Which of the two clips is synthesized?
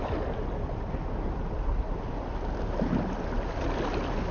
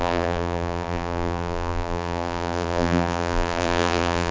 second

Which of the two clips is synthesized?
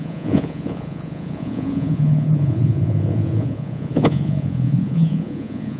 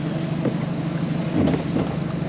first